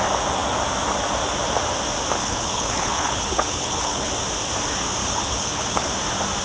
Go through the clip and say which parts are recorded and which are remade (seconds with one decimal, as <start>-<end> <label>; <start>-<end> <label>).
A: 0.0-2.2 recorded; 2.2-4.1 remade; 4.1-5.0 recorded; 5.0-5.9 remade; 5.9-6.4 recorded